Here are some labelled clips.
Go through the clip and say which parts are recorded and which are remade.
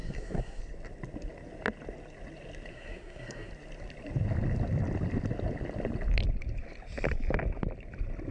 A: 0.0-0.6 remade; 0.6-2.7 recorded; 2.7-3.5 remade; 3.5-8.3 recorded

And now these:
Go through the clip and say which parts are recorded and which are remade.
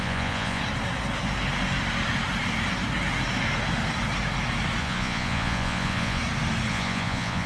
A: 0.0-0.6 remade; 0.6-4.8 recorded; 4.8-6.2 remade; 6.2-6.7 recorded; 6.7-7.5 remade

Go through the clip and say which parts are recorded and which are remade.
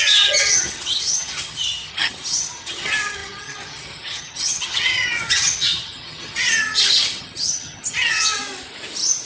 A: 0.0-8.4 remade; 8.4-9.3 recorded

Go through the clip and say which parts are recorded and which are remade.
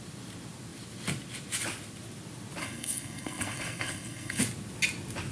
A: 0.0-2.6 recorded; 2.6-4.4 remade; 4.4-5.3 recorded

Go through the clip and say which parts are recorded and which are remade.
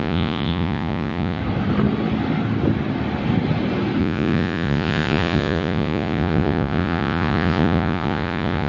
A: 0.0-1.4 remade; 1.4-4.0 recorded; 4.0-8.7 remade